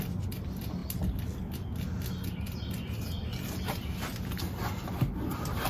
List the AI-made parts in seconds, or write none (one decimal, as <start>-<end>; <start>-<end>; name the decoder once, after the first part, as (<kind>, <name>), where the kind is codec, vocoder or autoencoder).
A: none